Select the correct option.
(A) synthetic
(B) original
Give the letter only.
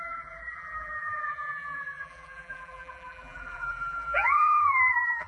A